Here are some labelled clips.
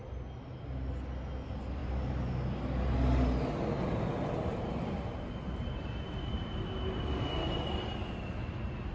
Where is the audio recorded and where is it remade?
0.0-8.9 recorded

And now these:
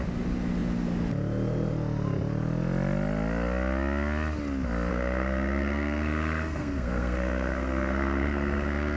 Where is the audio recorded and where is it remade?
0.0-4.9 recorded; 4.9-9.0 remade

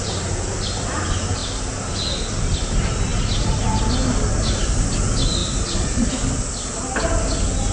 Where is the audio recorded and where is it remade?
0.0-5.4 recorded; 5.4-6.1 remade; 6.1-7.7 recorded

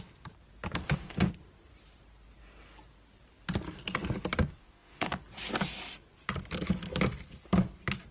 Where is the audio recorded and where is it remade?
0.0-0.8 recorded; 0.8-1.3 remade; 1.3-4.6 recorded; 4.6-5.2 remade; 5.2-8.1 recorded

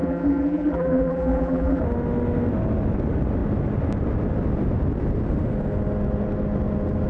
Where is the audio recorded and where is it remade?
0.0-1.8 remade; 1.8-7.1 recorded

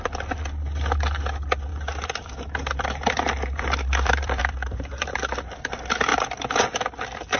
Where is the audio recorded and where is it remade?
0.0-1.7 recorded; 1.7-5.3 remade; 5.3-7.4 recorded